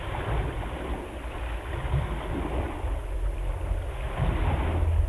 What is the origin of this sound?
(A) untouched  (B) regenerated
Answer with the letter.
A